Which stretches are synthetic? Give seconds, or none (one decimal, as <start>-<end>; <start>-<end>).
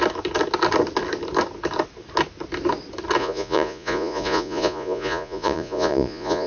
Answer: 3.2-6.5